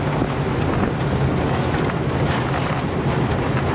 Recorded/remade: recorded